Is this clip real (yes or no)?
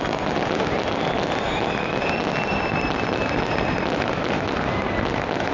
yes